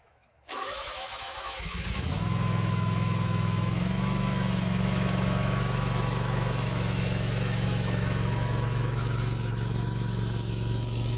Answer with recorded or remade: remade